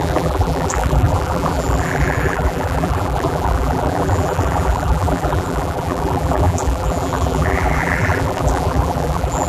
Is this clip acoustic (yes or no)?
no